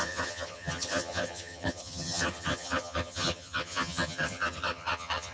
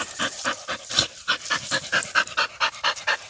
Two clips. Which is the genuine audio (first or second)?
second